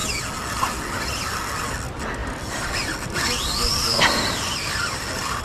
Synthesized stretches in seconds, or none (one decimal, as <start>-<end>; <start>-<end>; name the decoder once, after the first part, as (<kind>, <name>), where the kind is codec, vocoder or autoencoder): 2.2-5.4 (vocoder, BigVGAN v2)